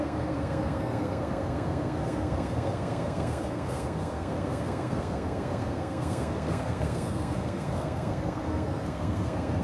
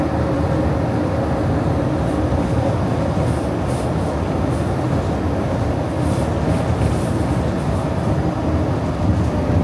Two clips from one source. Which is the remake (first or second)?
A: first